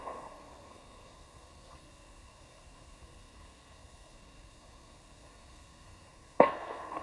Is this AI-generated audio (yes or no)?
yes